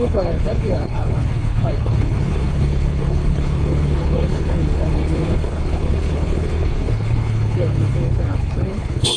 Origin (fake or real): fake